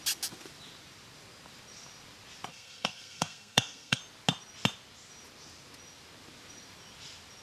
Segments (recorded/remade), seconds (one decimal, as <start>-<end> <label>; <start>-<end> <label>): 0.0-2.5 recorded; 2.5-4.0 remade; 4.0-7.4 recorded